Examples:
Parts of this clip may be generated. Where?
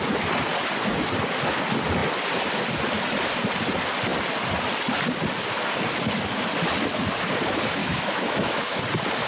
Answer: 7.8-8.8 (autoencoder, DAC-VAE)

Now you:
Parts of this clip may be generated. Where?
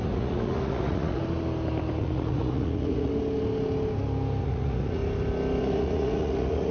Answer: 0.0-1.2 (vocoder, Vocos); 2.0-3.1; 4.4-5.0; 5.6-6.7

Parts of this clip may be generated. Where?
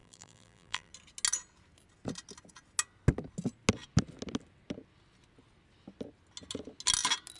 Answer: 0.0-0.9 (vocoder, BigVGAN v2)